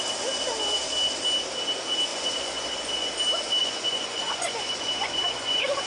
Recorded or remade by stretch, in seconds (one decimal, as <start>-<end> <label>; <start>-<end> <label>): 0.0-2.1 recorded; 2.1-3.1 remade; 3.1-3.6 recorded; 3.6-5.9 remade